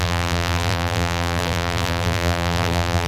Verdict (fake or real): fake